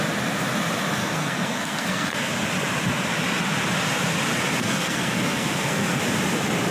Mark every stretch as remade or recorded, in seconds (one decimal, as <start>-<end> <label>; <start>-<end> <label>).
0.0-1.0 recorded; 1.0-2.3 remade; 2.3-4.6 recorded; 4.6-6.0 remade; 6.0-6.7 recorded